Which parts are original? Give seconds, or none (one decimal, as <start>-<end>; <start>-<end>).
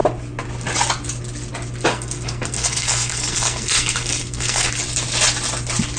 0.0-1.9; 4.7-6.0